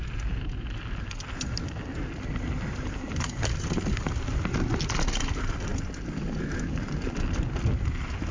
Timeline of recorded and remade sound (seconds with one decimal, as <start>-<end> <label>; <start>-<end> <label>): 0.0-8.3 recorded